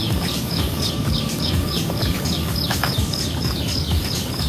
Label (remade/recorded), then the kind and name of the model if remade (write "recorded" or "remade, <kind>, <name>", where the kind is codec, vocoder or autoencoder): remade, codec, DAC